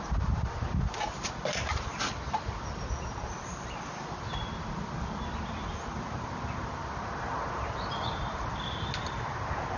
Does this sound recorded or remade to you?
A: recorded